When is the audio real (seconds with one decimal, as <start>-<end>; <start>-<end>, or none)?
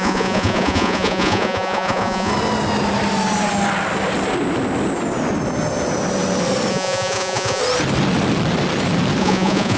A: 2.3-6.7; 7.6-9.2